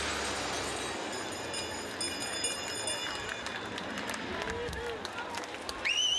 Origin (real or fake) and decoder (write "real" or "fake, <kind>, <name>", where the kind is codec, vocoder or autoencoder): real